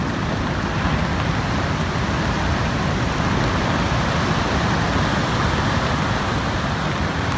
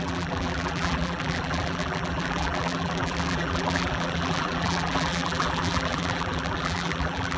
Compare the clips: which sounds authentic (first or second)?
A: first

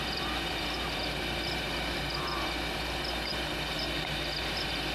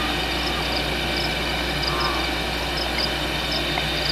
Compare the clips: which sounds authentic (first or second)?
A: second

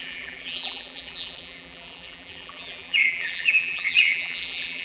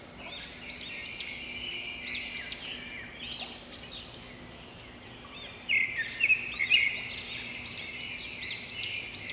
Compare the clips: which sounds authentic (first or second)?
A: second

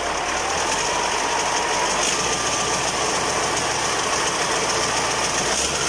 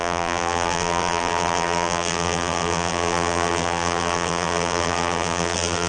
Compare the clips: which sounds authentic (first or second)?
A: first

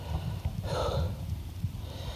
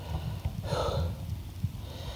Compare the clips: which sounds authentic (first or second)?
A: second